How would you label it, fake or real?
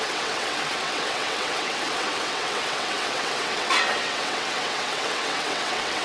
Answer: fake